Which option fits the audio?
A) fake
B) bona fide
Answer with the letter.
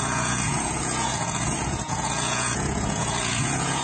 A